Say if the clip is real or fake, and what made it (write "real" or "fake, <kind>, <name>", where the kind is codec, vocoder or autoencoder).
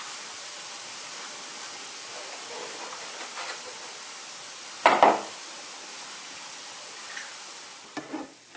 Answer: real